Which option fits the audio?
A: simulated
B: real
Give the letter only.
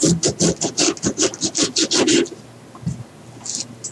B